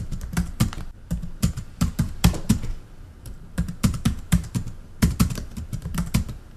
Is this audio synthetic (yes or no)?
yes